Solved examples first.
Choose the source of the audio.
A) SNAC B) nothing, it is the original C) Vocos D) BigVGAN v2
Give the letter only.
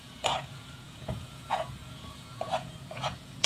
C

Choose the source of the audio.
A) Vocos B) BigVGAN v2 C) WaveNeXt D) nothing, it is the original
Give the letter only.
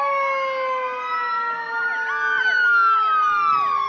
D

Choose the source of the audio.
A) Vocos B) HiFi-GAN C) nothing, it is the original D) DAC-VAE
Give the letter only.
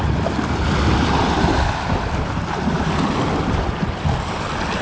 C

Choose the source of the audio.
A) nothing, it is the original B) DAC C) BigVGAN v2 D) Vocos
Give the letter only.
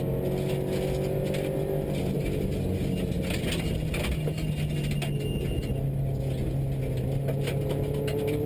A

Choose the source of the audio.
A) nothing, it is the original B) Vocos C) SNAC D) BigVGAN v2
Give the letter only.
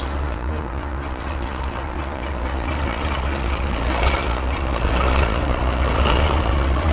B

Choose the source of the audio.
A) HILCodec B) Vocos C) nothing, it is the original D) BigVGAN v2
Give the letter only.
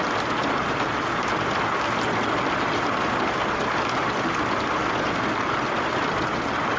C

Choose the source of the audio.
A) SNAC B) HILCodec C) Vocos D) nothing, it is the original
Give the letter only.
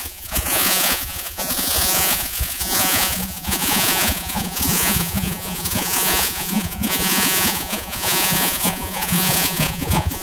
C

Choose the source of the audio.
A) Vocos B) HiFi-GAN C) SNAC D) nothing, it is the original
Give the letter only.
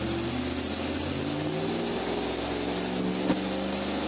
D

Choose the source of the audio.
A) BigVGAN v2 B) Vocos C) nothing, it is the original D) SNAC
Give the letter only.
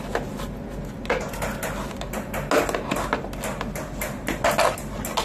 C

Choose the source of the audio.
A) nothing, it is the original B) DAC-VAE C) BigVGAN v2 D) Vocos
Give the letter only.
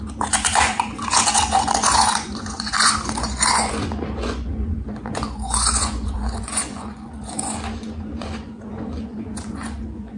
D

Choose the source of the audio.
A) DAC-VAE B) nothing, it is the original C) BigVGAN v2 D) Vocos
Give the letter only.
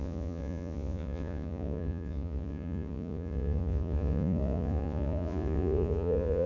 D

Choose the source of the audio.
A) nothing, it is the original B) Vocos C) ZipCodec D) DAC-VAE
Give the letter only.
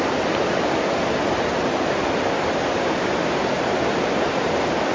A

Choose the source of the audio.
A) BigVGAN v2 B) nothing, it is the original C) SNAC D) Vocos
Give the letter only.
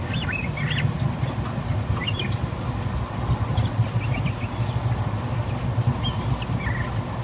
B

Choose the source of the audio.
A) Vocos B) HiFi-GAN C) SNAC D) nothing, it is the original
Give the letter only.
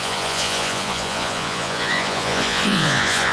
A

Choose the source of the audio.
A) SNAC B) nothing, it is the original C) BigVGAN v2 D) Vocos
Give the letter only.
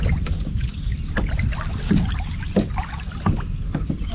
B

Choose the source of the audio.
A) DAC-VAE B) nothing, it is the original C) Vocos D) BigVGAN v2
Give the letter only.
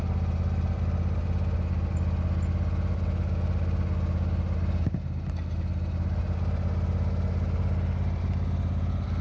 B